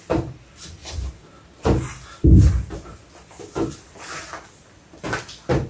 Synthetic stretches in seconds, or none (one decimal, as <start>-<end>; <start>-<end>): none

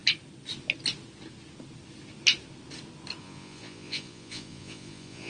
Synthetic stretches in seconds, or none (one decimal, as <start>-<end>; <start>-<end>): 3.2-5.3